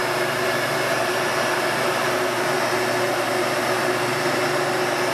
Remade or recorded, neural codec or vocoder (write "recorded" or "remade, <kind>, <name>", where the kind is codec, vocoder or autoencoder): recorded